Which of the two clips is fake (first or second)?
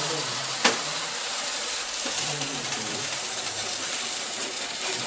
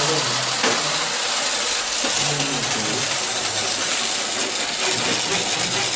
first